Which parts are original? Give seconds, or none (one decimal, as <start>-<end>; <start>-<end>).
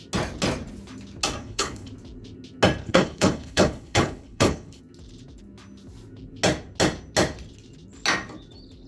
0.0-1.4; 1.9-2.8; 4.8-8.9